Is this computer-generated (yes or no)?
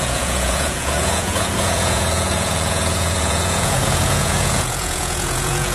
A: yes